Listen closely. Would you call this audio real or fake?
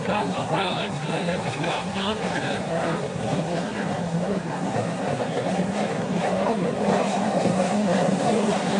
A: fake